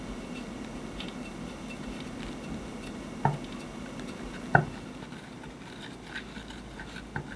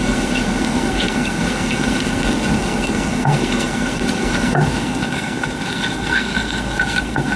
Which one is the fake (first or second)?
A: second